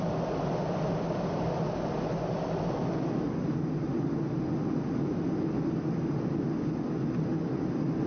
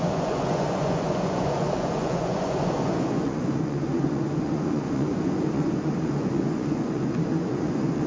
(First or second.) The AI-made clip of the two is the second